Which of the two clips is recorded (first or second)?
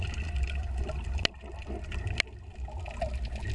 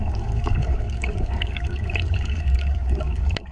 first